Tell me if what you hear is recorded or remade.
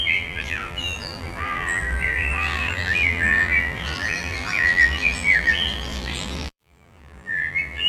remade